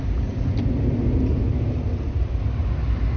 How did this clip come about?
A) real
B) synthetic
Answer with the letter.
A